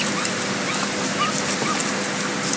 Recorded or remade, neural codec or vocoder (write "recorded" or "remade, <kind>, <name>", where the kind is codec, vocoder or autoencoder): recorded